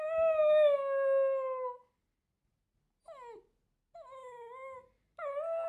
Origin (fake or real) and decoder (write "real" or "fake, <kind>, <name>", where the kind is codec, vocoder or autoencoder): real